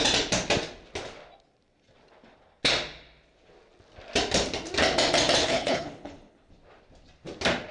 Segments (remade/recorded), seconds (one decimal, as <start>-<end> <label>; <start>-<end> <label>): 0.0-5.4 recorded; 5.4-6.5 remade; 6.5-7.7 recorded